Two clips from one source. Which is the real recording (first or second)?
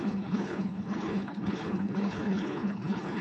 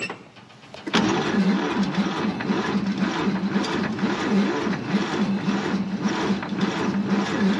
second